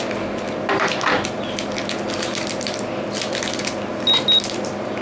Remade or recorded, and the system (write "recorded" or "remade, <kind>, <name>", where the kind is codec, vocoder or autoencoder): recorded